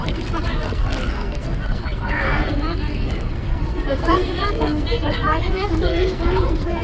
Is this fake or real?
fake